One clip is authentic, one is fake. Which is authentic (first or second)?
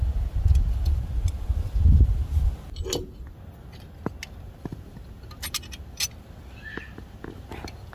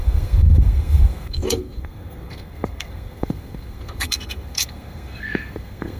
first